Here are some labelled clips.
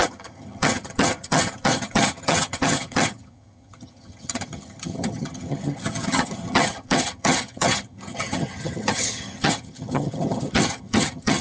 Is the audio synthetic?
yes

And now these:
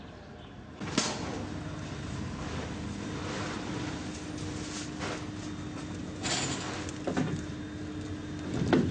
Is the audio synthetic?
no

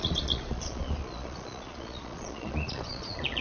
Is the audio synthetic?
yes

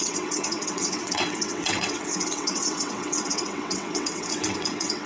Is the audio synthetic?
yes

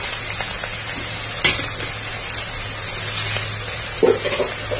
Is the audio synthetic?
no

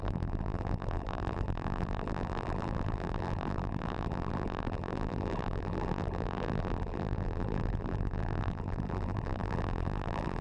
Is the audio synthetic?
yes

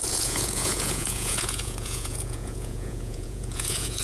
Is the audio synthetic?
yes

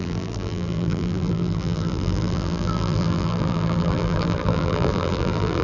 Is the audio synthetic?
yes